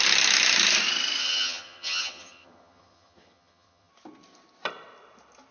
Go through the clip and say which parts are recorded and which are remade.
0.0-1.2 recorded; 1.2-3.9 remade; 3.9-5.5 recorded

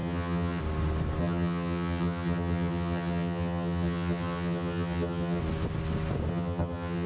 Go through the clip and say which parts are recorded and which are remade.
0.0-0.6 remade; 0.6-1.2 recorded; 1.2-5.4 remade; 5.4-6.3 recorded; 6.3-7.1 remade

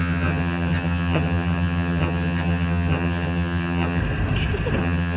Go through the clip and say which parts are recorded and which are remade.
0.0-4.0 remade; 4.0-4.8 recorded; 4.8-5.2 remade

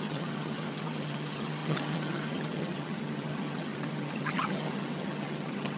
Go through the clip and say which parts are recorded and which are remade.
0.0-5.8 remade

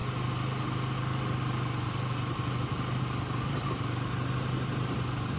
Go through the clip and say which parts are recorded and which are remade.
0.0-5.4 recorded